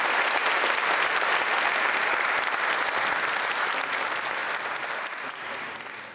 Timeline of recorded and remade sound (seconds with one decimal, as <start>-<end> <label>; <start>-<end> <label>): 0.0-0.4 recorded; 0.4-2.4 remade; 2.4-6.1 recorded